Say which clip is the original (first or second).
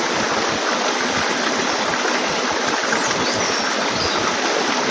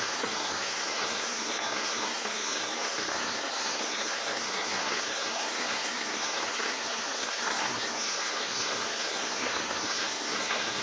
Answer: first